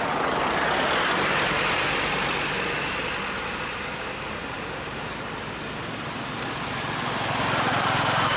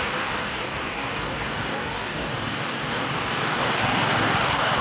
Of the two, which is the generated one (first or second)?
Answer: second